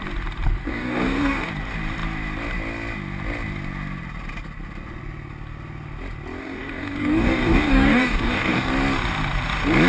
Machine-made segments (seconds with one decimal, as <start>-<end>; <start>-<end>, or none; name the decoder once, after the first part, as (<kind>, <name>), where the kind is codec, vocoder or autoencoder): 0.7-1.5 (codec, DAC); 6.4-8.7